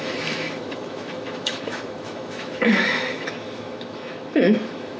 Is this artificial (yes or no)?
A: yes